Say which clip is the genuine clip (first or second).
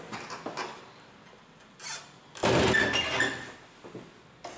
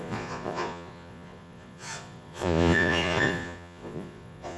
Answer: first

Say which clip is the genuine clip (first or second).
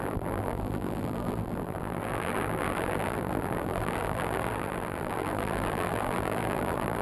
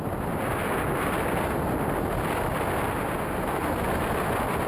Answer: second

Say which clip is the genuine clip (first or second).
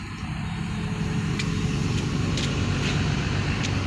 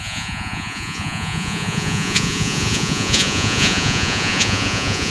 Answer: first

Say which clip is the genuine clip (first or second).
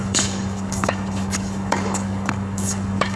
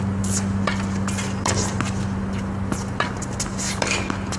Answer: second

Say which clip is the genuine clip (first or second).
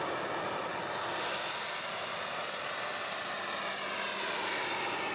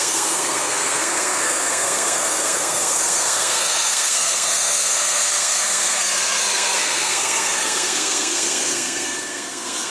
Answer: first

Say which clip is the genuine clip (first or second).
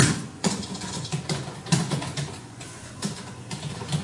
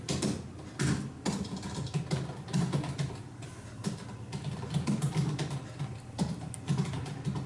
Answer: second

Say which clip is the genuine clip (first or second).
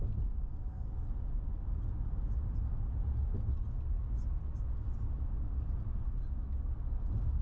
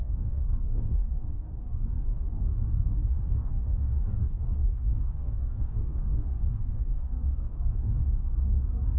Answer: first